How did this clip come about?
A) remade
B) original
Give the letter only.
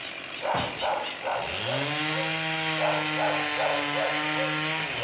B